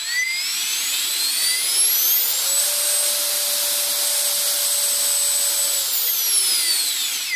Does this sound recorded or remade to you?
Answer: recorded